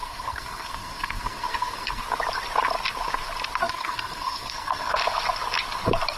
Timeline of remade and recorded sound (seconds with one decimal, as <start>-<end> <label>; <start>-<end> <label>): 0.0-2.0 remade; 2.0-3.6 recorded; 3.6-4.9 remade; 4.9-6.2 recorded